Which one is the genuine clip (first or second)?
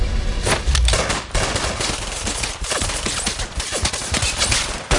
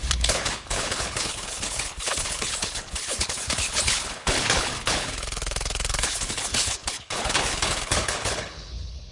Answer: first